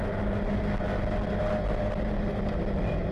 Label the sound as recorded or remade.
recorded